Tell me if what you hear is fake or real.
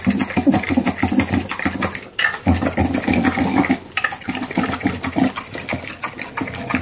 real